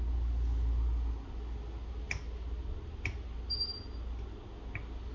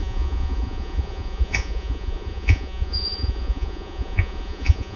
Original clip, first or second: first